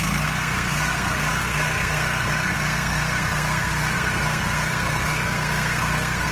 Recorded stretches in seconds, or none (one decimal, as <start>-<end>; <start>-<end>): none